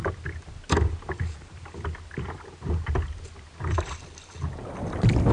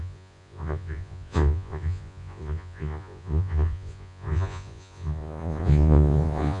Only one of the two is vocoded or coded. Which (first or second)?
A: second